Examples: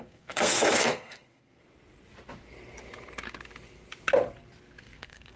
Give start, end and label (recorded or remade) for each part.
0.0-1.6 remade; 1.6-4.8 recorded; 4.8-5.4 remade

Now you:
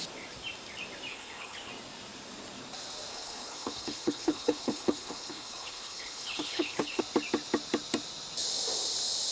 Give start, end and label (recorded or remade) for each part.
0.0-1.1 recorded; 1.1-1.7 remade; 1.7-3.1 recorded; 3.1-7.0 remade; 7.0-9.3 recorded

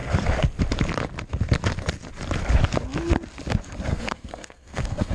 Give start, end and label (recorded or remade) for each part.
0.0-3.9 recorded; 3.9-5.1 remade

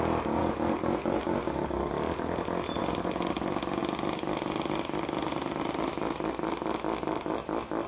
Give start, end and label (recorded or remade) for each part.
0.0-0.4 recorded; 0.4-1.9 remade; 1.9-7.9 recorded

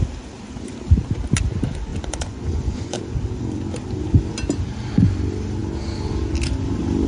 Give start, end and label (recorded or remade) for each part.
0.0-1.9 recorded; 1.9-3.0 remade; 3.0-7.1 recorded

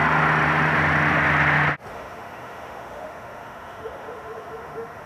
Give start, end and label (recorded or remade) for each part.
0.0-1.9 recorded; 1.9-5.1 remade

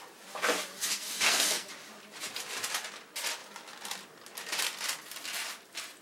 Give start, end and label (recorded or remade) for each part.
0.0-0.8 recorded; 0.8-1.7 remade; 1.7-6.0 recorded